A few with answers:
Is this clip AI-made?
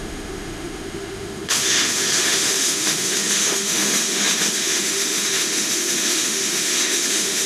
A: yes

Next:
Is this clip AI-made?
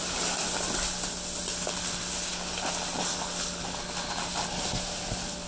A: no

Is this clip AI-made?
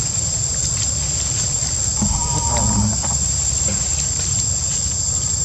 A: no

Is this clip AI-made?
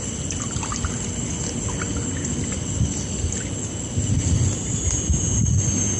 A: no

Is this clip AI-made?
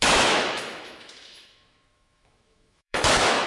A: yes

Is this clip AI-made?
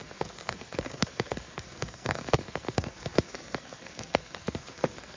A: yes